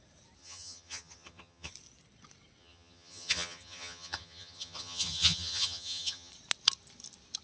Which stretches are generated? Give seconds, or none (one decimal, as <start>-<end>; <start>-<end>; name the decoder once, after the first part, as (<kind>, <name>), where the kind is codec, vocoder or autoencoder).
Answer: 0.4-1.7 (vocoder, HiFi-GAN); 2.6-6.3